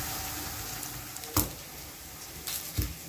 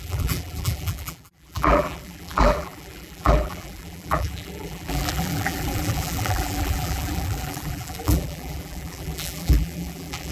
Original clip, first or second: first